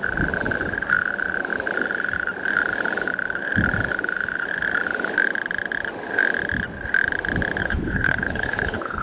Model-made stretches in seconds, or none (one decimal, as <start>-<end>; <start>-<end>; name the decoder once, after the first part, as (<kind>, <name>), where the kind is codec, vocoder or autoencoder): 7.6-9.0 (codec, HILCodec)